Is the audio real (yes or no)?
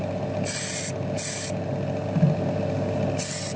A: yes